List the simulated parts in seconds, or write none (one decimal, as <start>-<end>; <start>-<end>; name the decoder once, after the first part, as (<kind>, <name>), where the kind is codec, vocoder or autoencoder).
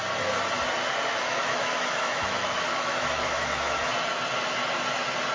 1.1-3.8 (autoencoder, DAC-VAE)